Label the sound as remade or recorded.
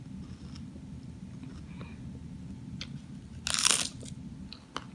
recorded